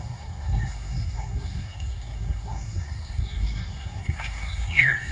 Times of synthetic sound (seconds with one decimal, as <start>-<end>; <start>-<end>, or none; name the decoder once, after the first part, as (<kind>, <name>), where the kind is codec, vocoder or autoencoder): 0.0-5.1 (codec, SNAC)